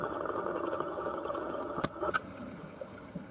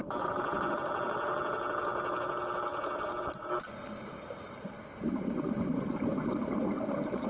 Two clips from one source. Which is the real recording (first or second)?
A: second